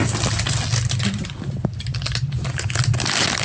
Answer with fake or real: real